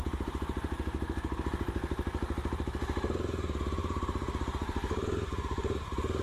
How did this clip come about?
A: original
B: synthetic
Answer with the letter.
B